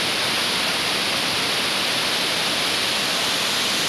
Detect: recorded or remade recorded